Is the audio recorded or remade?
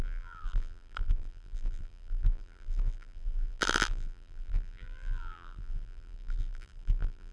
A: remade